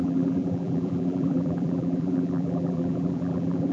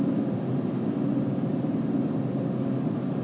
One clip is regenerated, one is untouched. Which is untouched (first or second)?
second